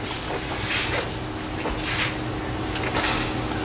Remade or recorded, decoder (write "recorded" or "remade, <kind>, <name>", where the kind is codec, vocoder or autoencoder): recorded